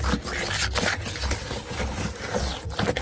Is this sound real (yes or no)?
yes